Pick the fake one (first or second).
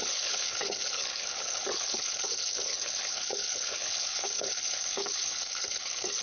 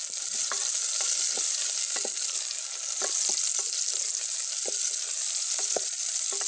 first